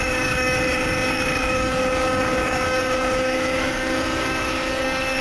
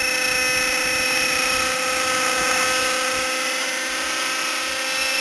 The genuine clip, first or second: second